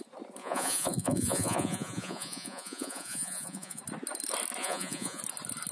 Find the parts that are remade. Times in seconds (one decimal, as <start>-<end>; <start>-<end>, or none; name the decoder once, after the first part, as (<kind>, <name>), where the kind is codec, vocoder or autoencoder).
0.4-3.8 (vocoder, Vocos); 4.6-5.2